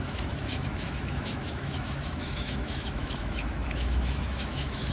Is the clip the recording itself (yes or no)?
no